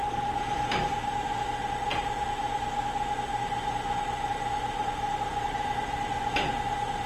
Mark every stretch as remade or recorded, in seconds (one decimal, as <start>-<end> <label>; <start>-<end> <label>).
0.0-4.8 recorded; 4.8-6.4 remade; 6.4-7.1 recorded